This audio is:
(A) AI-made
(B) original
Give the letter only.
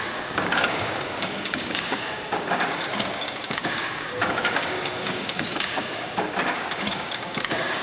A